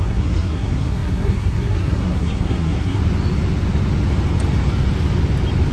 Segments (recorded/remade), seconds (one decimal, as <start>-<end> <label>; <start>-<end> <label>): 0.0-3.0 remade; 3.0-5.7 recorded